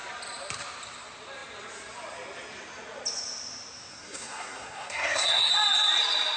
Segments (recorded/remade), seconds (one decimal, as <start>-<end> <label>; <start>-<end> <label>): 0.0-3.9 recorded; 3.9-5.5 remade; 5.5-6.4 recorded